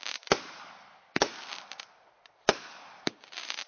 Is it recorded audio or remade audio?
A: recorded